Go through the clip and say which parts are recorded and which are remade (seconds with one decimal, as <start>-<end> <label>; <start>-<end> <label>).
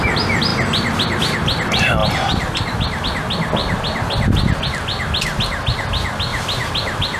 0.0-0.5 recorded; 0.5-1.2 remade; 1.2-2.0 recorded; 2.0-3.0 remade; 3.0-3.6 recorded; 3.6-4.7 remade; 4.7-6.3 recorded; 6.3-7.2 remade